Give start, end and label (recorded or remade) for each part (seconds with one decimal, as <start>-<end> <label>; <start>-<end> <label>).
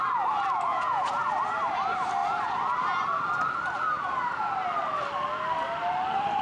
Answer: 0.0-0.7 recorded; 0.7-1.3 remade; 1.3-6.4 recorded